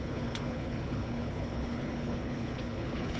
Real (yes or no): no